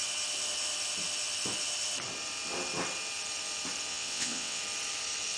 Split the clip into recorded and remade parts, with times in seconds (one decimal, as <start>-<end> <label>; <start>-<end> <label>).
0.0-3.9 recorded; 3.9-4.6 remade; 4.6-5.4 recorded